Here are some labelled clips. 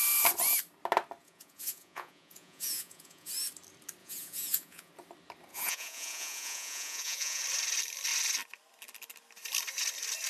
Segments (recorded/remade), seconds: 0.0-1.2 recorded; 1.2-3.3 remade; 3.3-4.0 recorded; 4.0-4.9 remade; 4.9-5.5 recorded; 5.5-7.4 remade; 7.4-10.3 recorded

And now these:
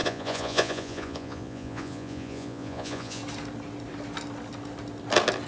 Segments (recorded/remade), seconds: 0.0-3.2 remade; 3.2-5.5 recorded

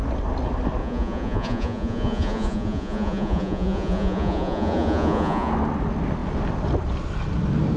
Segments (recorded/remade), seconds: 0.0-0.8 recorded; 0.8-5.5 remade; 5.5-7.8 recorded